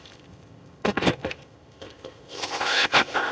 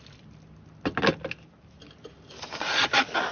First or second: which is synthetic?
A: first